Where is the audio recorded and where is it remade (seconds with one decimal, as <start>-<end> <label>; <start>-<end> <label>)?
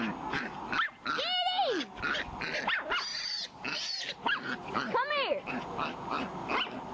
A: 0.0-3.1 recorded; 3.1-5.5 remade; 5.5-6.9 recorded